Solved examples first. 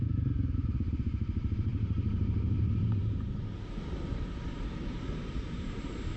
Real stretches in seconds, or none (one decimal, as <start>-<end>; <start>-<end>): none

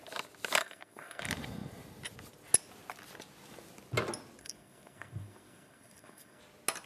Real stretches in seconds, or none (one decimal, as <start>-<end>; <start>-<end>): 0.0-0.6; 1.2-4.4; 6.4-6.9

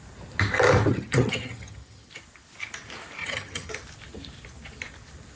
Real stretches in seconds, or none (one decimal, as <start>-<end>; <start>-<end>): 0.0-0.9; 2.1-3.2; 3.7-5.4